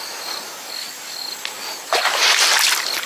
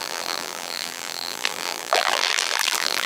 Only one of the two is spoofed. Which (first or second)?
second